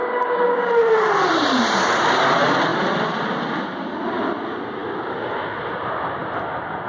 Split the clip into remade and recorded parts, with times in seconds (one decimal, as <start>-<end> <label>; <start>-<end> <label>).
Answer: 0.0-0.7 remade; 0.7-6.9 recorded